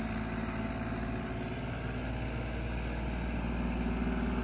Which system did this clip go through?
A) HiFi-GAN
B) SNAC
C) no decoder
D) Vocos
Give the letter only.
C